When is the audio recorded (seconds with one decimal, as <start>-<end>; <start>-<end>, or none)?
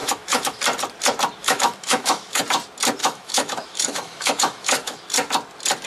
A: 0.6-1.4; 2.4-3.0; 5.0-5.9